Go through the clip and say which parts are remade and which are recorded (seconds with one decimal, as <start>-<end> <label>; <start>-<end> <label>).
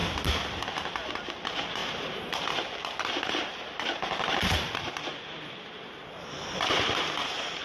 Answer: 0.0-1.8 recorded; 1.8-4.9 remade; 4.9-7.6 recorded